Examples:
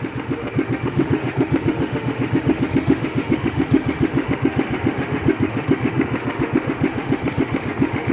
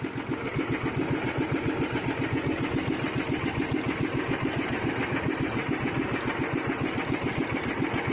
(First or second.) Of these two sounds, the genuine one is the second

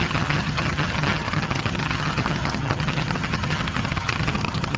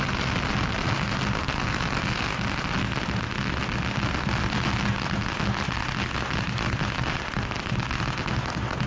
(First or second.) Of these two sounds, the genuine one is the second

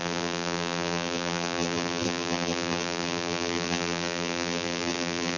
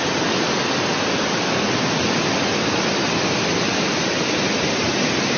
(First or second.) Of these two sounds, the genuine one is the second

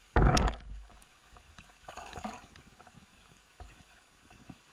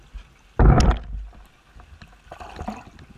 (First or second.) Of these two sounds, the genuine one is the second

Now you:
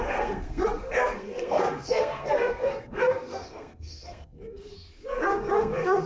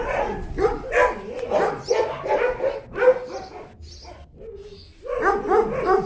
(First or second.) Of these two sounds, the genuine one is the second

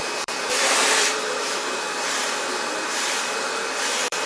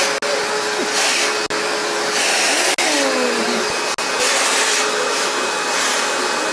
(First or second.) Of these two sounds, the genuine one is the second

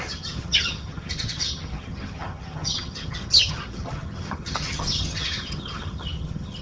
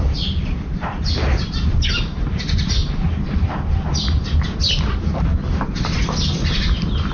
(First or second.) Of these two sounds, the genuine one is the second